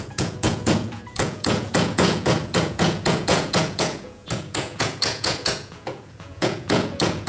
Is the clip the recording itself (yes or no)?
no